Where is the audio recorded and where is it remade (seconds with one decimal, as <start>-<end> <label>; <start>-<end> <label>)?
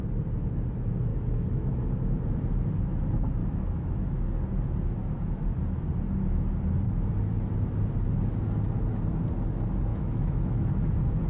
0.0-1.1 recorded; 1.1-1.7 remade; 1.7-3.4 recorded; 3.4-4.3 remade; 4.3-9.9 recorded; 9.9-10.7 remade; 10.7-11.3 recorded